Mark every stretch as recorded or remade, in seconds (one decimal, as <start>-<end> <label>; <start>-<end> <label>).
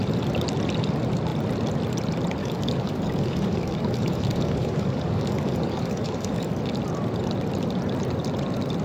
0.0-2.4 recorded; 2.4-6.6 remade; 6.6-8.8 recorded